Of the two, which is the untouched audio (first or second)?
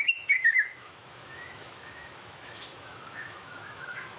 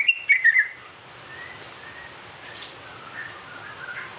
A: second